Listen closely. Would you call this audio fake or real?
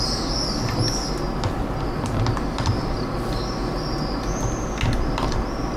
real